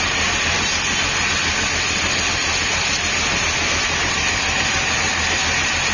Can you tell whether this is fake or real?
real